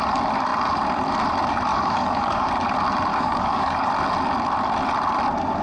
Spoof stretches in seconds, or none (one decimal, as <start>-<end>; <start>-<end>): 1.7-2.5; 3.1-3.9